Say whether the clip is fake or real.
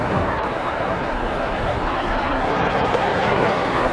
fake